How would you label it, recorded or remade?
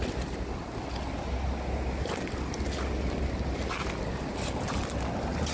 recorded